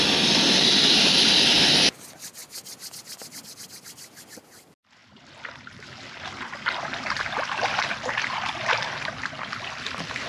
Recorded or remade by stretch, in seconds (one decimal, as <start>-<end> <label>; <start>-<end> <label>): 0.0-10.3 recorded